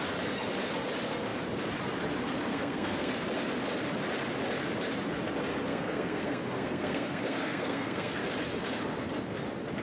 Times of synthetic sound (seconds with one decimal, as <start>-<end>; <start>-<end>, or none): 2.5-3.1; 5.7-8.2